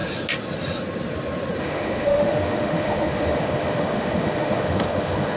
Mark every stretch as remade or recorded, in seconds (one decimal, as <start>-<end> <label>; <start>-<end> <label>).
0.0-1.6 recorded; 1.6-5.4 remade